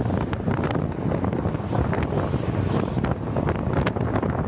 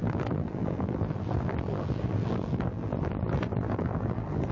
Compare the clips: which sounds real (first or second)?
first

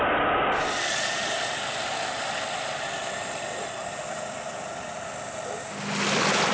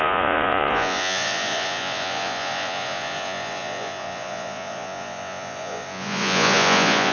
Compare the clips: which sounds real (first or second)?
first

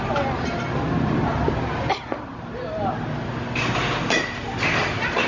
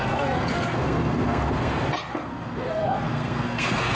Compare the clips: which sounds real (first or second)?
first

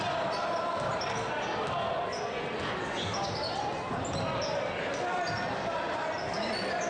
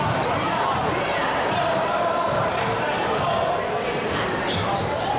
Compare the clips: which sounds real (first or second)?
first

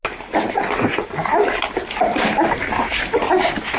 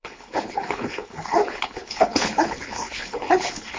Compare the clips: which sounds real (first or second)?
first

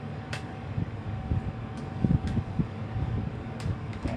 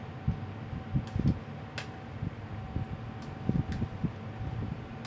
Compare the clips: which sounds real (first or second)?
second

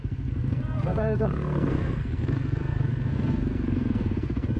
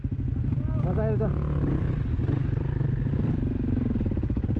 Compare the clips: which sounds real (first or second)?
second